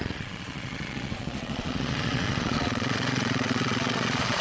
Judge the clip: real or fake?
fake